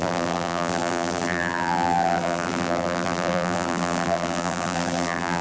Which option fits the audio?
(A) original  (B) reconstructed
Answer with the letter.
B